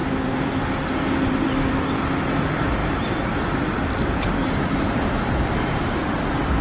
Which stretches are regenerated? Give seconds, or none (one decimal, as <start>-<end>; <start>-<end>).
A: 0.0-1.8; 2.8-6.6